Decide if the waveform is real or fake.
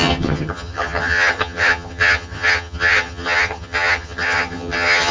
fake